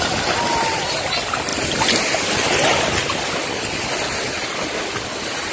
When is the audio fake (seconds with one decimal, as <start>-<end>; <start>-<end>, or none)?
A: none